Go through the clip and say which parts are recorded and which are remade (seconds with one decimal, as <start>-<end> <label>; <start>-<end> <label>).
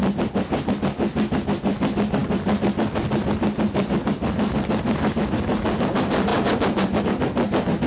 0.0-7.9 recorded